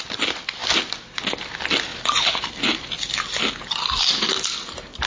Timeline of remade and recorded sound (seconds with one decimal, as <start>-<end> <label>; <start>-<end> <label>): 0.0-5.1 recorded